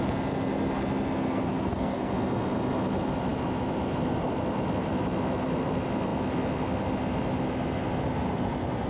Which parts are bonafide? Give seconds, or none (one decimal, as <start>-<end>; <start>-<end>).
0.0-1.3; 2.1-8.9